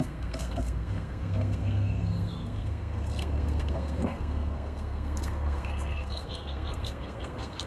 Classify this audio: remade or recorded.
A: remade